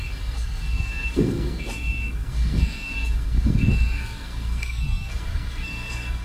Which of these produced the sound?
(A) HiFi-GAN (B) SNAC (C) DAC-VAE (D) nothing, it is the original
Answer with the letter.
B